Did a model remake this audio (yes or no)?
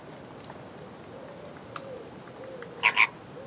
no